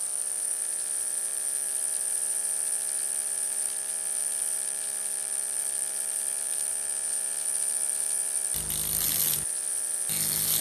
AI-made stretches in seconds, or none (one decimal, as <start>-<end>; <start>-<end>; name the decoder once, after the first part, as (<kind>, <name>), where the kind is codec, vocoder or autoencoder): 1.3-1.8 (vocoder, BigVGAN v2); 4.2-6.7